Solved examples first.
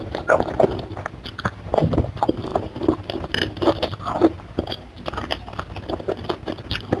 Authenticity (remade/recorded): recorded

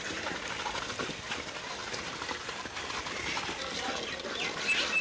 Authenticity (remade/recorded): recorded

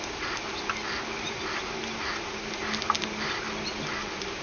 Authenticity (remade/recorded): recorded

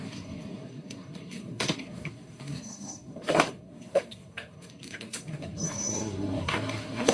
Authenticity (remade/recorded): remade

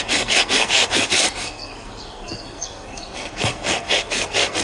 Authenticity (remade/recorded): remade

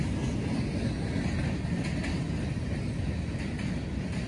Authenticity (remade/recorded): recorded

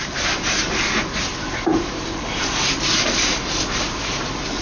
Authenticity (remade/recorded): remade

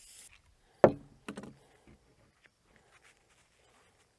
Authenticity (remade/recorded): recorded